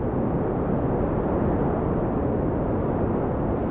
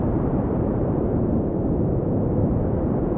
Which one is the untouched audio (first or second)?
first